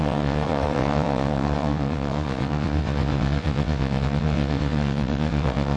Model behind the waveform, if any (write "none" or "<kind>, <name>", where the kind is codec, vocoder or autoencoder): vocoder, WaveNeXt